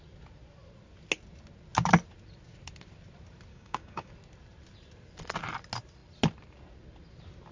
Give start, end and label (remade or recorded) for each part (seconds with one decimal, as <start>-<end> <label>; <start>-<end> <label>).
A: 0.0-3.5 recorded; 3.5-4.1 remade; 4.1-7.5 recorded